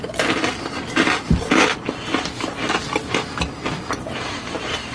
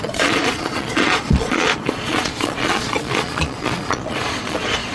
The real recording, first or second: first